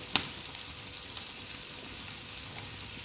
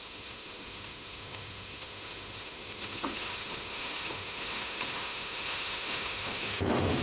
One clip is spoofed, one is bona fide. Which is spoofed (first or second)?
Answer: second